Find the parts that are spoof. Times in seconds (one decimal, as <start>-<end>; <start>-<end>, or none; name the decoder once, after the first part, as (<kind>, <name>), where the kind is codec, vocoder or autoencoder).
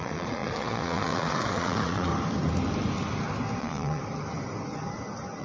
0.0-2.1 (vocoder, Vocos); 3.6-4.0